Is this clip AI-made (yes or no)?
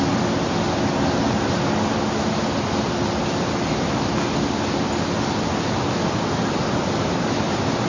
no